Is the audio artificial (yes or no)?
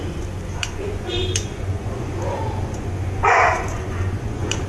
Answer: yes